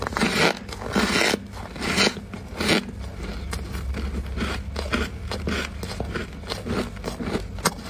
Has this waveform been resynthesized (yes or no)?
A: no